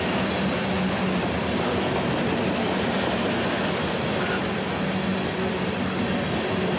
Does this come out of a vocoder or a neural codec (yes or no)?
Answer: no